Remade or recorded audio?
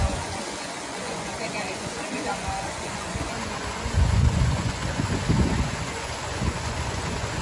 remade